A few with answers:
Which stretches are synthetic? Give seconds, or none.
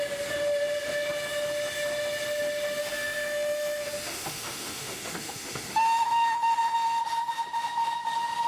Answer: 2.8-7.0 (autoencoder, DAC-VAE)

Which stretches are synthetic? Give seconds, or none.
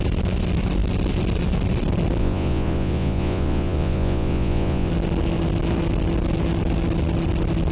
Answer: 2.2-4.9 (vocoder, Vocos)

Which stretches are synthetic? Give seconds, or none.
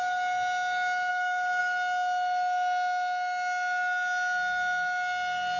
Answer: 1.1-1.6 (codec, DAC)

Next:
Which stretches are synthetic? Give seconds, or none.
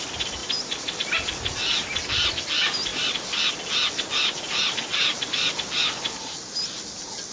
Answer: 0.4-1.1 (vocoder, BigVGAN v2); 2.9-3.5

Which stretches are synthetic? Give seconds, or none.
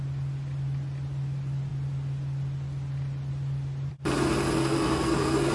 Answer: 4.6-5.5 (codec, SNAC)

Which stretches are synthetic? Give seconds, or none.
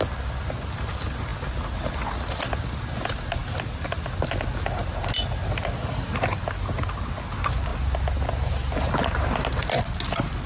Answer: none